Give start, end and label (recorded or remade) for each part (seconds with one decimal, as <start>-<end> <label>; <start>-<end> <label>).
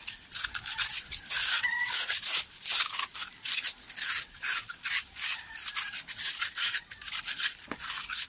0.0-1.4 recorded; 1.4-3.0 remade; 3.0-5.3 recorded; 5.3-7.2 remade; 7.2-8.3 recorded